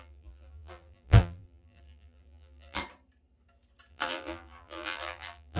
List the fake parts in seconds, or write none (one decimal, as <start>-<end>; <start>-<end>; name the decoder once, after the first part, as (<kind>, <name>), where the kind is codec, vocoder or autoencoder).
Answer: 0.0-2.8 (vocoder, BigVGAN v2); 3.9-5.6